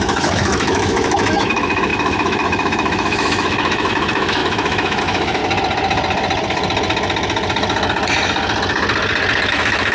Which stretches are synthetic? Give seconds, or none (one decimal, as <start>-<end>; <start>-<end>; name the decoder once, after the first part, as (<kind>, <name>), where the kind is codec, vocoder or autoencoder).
0.0-5.4 (autoencoder, DAC-VAE); 9.5-9.9